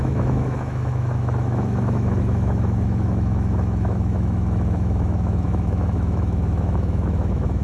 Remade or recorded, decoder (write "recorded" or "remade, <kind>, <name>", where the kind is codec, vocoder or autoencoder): remade, autoencoder, DAC-VAE